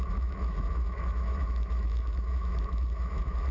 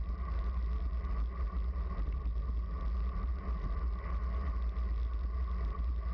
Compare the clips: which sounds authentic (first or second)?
second